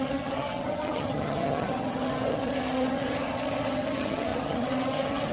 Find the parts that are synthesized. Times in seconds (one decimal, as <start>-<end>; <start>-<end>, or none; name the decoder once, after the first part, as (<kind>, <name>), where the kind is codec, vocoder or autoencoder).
0.0-5.3 (vocoder, HiFi-GAN)